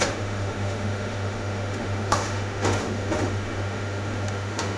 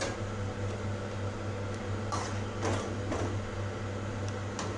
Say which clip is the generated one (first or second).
first